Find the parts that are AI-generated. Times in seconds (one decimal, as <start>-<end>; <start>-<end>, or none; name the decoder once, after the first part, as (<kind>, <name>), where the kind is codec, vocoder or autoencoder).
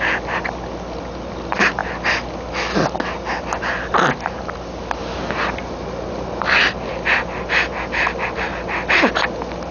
none